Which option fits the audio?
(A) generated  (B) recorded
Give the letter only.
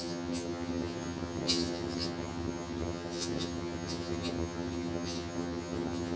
A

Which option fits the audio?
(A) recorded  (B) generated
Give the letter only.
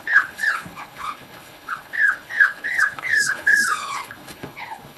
B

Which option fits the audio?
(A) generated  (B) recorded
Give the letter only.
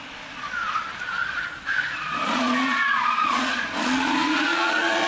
A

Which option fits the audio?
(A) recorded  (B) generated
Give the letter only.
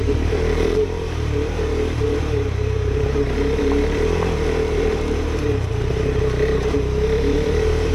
B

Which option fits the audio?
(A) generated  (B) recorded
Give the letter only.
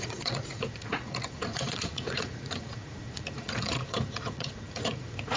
A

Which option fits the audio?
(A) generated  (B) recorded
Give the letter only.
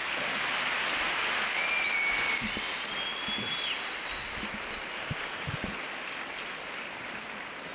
B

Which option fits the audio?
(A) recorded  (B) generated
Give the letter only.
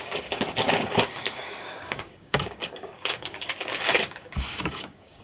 B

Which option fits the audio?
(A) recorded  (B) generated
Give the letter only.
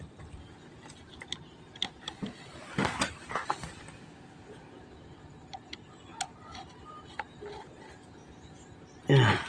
A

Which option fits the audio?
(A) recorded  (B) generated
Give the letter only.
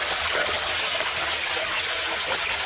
A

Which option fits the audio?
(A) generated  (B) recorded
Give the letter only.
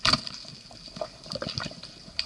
B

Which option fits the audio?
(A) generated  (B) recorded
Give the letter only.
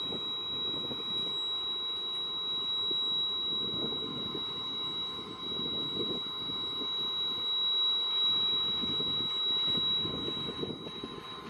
B